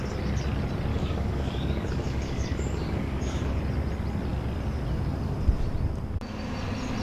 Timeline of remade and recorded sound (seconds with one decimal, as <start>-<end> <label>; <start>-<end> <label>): 0.0-0.9 recorded; 0.9-3.6 remade; 3.6-7.0 recorded